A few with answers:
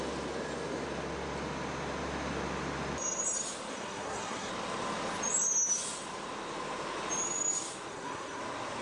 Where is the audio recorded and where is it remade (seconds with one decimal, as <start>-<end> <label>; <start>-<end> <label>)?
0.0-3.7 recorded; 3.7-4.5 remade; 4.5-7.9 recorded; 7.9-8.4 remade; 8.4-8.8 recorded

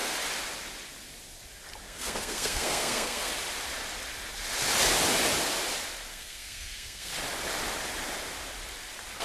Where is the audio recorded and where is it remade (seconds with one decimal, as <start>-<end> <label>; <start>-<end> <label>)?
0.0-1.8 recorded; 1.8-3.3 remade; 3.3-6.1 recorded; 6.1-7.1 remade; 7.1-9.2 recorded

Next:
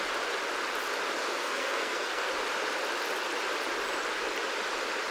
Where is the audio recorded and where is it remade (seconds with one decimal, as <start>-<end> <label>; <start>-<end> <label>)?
0.0-1.2 recorded; 1.2-2.3 remade; 2.3-5.1 recorded